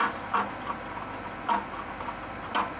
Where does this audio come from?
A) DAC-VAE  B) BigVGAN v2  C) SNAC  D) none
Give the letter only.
D